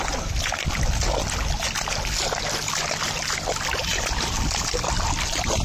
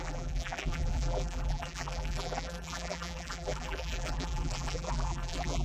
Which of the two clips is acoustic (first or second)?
first